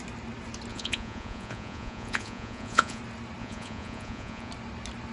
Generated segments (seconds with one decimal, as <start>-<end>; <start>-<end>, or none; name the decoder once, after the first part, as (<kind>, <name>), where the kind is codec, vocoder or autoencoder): 0.7-3.0 (vocoder, Vocos); 3.4-4.5